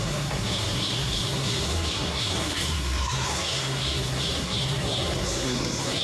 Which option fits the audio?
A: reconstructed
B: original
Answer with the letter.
A